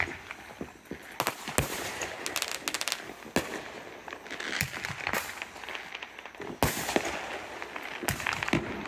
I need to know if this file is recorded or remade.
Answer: recorded